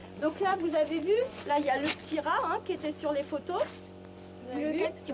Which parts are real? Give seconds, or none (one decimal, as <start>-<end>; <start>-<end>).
2.0-5.1